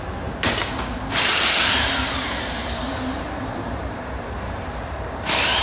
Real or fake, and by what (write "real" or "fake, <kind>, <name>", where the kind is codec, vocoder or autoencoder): fake, vocoder, BigVGAN v2